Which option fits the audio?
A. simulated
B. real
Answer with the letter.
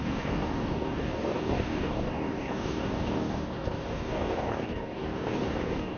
A